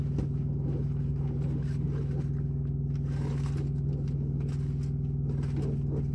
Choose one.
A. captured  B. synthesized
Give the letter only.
A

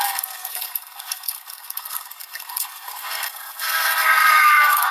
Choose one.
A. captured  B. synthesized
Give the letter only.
B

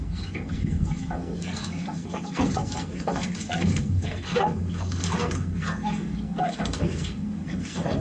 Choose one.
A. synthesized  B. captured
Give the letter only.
A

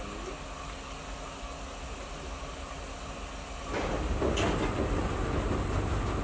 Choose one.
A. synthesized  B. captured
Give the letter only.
B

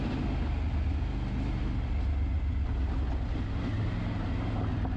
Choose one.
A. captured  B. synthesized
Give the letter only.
A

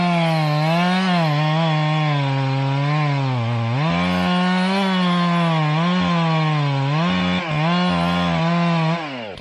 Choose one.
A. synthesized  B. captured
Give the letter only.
B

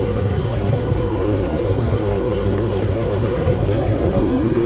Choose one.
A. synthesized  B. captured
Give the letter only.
A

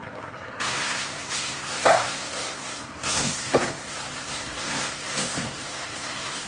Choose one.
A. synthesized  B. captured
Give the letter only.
A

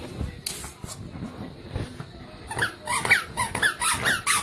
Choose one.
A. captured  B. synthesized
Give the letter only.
A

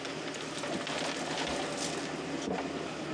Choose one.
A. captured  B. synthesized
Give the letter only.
A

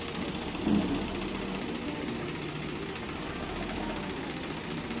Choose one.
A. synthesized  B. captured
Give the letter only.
B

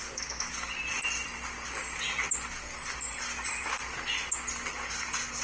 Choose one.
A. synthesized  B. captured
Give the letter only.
B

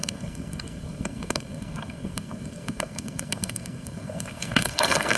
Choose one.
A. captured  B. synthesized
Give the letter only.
B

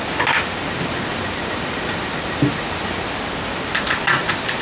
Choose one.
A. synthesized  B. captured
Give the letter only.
B